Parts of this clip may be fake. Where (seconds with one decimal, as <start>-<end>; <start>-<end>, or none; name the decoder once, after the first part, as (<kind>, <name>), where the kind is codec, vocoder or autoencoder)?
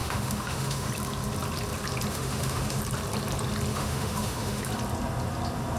0.0-0.9 (autoencoder, DAC-VAE); 2.1-2.8; 3.7-4.6